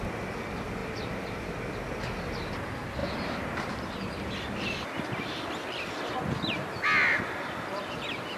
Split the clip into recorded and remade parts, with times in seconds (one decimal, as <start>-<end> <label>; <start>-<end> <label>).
0.0-0.8 recorded; 0.8-1.4 remade; 1.4-3.0 recorded; 3.0-3.7 remade; 3.7-8.4 recorded